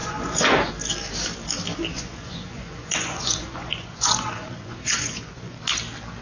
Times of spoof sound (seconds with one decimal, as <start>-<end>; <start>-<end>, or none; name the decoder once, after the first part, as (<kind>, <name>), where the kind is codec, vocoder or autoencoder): 0.0-0.7 (vocoder, Vocos); 1.9-5.6

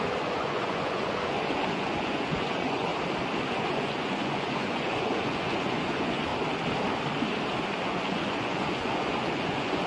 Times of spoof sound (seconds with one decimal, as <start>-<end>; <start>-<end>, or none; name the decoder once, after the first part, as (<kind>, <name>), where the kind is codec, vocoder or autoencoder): 0.0-2.9 (vocoder, Vocos); 3.5-6.3; 7.8-9.9

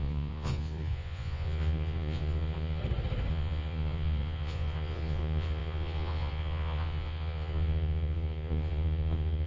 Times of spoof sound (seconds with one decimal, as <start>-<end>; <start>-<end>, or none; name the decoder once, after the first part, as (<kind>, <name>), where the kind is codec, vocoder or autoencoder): 0.0-2.8 (vocoder, Vocos); 3.3-9.5

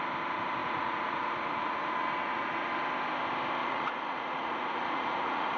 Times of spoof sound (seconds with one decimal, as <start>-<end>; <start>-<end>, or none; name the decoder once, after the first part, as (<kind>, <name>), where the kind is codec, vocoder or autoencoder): 0.6-2.7 (vocoder, Vocos); 3.6-5.6

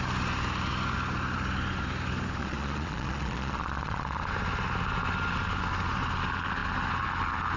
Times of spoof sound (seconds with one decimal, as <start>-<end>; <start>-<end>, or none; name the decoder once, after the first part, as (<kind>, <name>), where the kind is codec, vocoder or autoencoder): 2.4-4.2 (vocoder, Vocos)